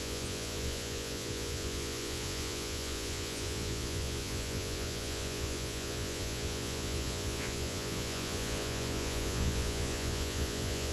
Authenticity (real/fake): fake